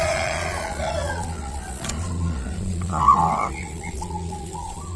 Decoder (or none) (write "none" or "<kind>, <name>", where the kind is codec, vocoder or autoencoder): vocoder, Vocos